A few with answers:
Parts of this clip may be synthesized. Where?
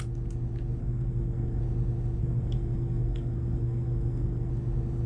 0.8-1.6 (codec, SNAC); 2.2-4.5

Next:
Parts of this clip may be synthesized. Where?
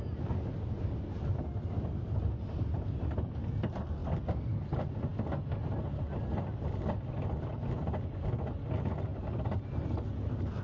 none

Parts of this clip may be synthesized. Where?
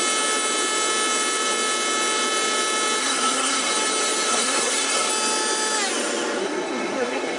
3.0-3.7 (codec, SNAC); 4.3-5.1; 6.4-7.4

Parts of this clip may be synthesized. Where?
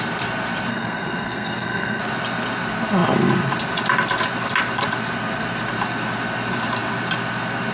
0.7-2.0 (codec, SNAC)